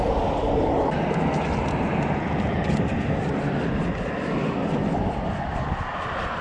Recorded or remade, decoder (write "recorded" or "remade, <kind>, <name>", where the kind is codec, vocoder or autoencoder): recorded